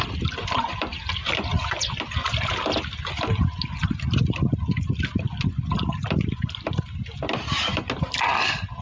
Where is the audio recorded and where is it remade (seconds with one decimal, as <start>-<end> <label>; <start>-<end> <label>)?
0.0-8.8 recorded